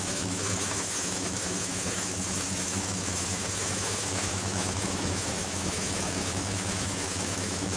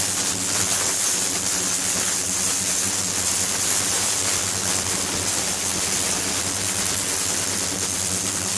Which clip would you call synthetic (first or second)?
first